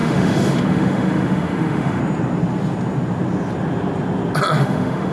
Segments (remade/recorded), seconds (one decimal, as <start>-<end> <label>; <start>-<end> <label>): 0.0-2.0 remade; 2.0-4.6 recorded; 4.6-5.1 remade